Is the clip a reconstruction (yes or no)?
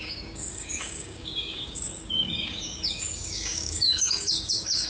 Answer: yes